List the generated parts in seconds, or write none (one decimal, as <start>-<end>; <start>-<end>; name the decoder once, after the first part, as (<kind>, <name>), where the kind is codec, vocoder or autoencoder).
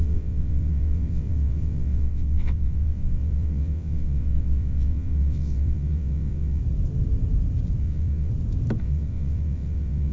0.0-6.6 (vocoder, WaveNeXt); 7.8-8.3; 8.8-10.1